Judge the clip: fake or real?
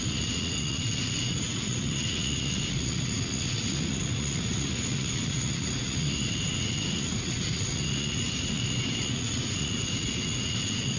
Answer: fake